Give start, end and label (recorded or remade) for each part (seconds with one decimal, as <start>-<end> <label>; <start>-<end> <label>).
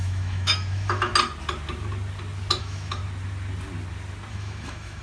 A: 0.0-1.1 remade; 1.1-2.6 recorded; 2.6-3.0 remade; 3.0-4.3 recorded; 4.3-5.0 remade